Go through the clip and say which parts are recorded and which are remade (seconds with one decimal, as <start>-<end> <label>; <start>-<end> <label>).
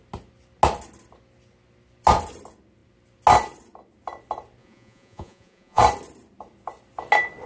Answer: 0.0-4.6 recorded; 4.6-5.8 remade; 5.8-7.5 recorded